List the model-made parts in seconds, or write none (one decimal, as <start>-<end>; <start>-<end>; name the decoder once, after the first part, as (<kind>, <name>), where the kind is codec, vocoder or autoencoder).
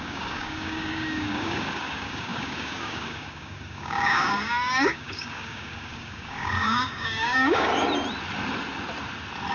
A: 0.0-7.7 (codec, DAC)